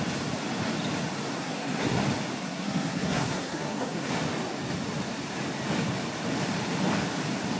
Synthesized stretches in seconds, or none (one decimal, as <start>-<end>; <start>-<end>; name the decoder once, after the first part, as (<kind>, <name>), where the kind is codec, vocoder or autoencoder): 1.3-2.0 (codec, SNAC); 2.4-4.1